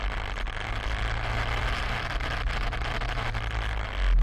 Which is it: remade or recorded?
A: recorded